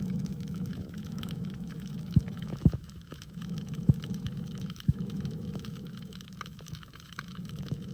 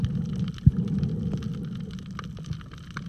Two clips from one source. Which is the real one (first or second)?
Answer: second